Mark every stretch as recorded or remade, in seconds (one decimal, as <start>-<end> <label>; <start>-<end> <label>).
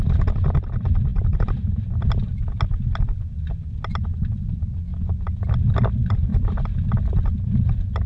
0.0-8.1 recorded